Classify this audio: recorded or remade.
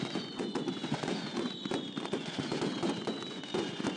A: remade